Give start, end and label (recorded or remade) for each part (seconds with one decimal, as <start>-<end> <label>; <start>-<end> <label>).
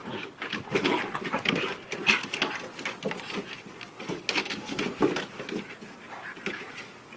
0.0-7.2 recorded